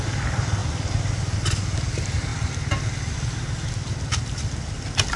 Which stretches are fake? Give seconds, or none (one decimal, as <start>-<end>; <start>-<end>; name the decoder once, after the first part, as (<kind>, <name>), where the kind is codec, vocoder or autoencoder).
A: none